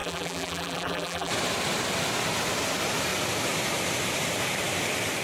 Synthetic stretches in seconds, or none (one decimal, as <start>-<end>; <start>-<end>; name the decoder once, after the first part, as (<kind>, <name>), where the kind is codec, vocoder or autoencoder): 0.0-1.3 (vocoder, BigVGAN v2)